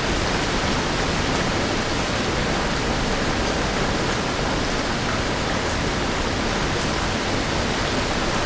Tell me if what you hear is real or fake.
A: real